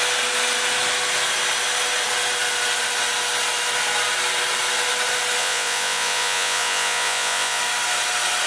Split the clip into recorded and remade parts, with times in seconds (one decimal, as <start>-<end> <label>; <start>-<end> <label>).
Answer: 0.0-5.4 recorded; 5.4-7.6 remade; 7.6-8.5 recorded